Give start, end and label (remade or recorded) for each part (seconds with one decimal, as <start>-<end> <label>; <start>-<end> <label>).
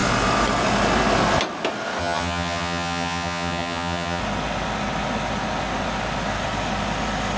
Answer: 0.0-2.0 recorded; 2.0-4.2 remade; 4.2-7.4 recorded